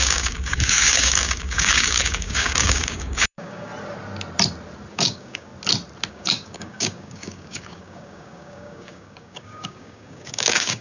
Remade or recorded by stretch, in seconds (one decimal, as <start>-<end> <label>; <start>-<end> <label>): 0.0-3.7 remade; 3.7-4.9 recorded; 4.9-5.5 remade; 5.5-6.1 recorded; 6.1-10.8 remade